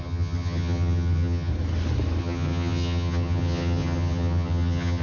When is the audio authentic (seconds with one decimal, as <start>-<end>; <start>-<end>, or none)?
1.5-2.2